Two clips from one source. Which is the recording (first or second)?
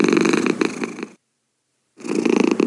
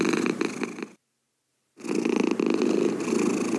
second